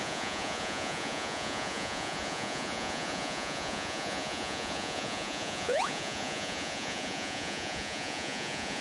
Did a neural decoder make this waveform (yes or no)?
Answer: yes